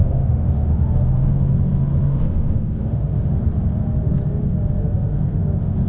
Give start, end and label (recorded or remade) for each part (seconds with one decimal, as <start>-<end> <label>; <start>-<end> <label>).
0.0-1.5 remade; 1.5-2.0 recorded; 2.0-3.4 remade; 3.4-4.8 recorded; 4.8-5.9 remade